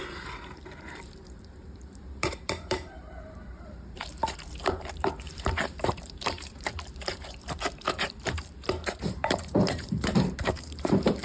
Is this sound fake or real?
fake